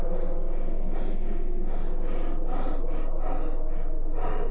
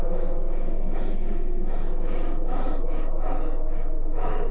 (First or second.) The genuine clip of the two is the first